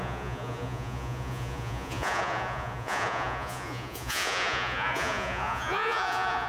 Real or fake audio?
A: fake